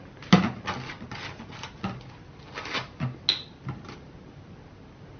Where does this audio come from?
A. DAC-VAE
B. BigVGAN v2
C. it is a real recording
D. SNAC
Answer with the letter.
C